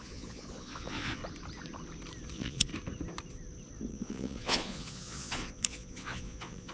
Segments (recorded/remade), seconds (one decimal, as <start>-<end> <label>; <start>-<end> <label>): 0.0-1.2 remade; 1.2-2.3 recorded; 2.3-2.7 remade; 2.7-3.9 recorded; 3.9-6.7 remade